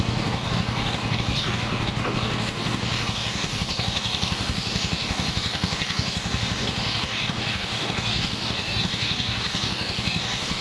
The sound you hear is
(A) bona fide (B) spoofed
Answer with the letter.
B